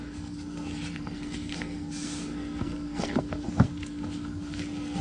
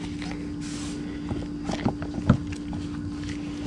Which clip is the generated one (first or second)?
first